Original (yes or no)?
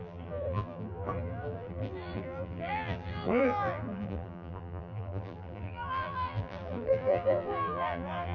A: no